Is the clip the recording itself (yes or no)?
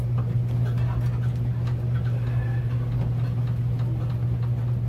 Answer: yes